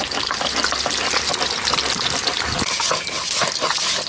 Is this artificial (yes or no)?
no